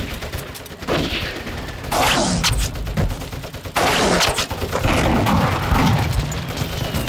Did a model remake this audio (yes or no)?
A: no